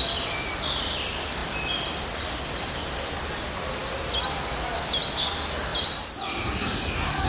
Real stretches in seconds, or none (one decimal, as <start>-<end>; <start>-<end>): 0.0-7.3